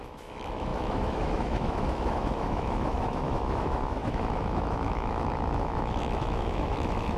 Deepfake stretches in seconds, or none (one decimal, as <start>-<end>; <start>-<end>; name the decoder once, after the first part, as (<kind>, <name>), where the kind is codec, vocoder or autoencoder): 0.0-7.2 (autoencoder, DAC-VAE)